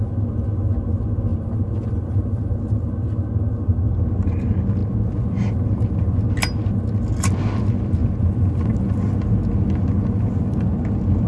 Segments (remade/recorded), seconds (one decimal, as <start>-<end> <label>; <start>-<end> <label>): 0.0-1.3 recorded; 1.3-2.6 remade; 2.6-11.3 recorded